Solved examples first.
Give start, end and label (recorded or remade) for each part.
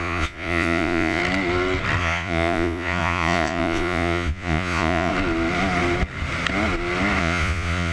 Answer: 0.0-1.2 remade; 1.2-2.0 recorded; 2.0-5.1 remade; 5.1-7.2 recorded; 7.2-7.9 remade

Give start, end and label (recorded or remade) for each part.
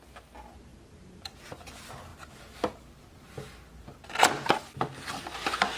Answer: 0.0-5.8 recorded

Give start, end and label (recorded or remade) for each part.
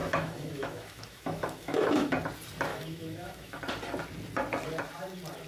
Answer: 0.0-2.1 remade; 2.1-2.7 recorded; 2.7-3.6 remade; 3.6-5.5 recorded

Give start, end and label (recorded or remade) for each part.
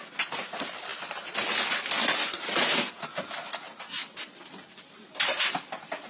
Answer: 0.0-6.1 recorded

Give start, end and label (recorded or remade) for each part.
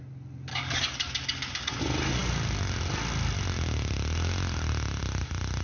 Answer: 0.0-0.5 recorded; 0.5-1.8 remade; 1.8-5.6 recorded